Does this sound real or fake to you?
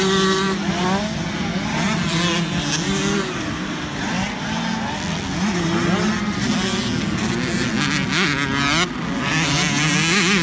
real